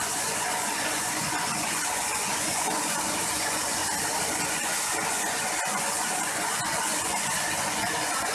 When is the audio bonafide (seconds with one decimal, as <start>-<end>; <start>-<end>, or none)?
3.8-4.3